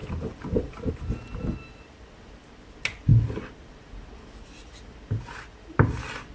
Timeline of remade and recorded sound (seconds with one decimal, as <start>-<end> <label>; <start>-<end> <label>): 0.0-6.3 recorded

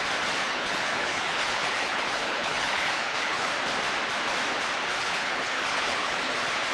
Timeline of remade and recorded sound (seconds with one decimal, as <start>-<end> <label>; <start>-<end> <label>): 0.0-0.4 recorded; 0.4-3.5 remade; 3.5-4.9 recorded; 4.9-6.3 remade; 6.3-6.7 recorded

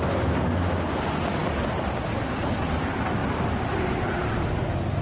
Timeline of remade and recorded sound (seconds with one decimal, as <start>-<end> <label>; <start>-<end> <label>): 0.0-5.0 recorded

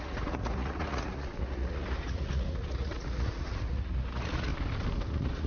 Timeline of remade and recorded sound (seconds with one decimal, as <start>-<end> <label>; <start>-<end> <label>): 0.0-4.5 remade; 4.5-5.1 recorded; 5.1-5.5 remade

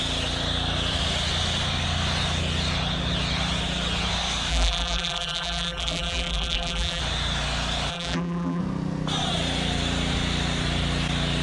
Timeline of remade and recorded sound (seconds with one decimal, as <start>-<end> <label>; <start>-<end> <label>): 0.0-4.5 recorded; 4.5-7.0 remade; 7.0-7.9 recorded; 7.9-8.6 remade; 8.6-11.4 recorded

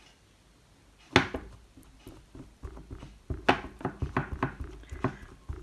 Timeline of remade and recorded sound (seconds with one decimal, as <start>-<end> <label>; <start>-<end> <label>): 0.0-5.6 recorded

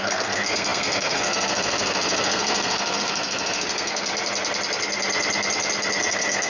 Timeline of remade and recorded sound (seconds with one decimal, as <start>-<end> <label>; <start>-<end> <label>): 0.0-4.1 remade; 4.1-6.1 recorded; 6.1-6.5 remade

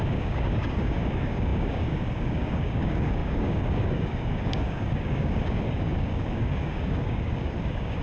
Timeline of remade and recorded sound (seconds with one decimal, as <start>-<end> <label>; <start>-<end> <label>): 0.0-8.0 remade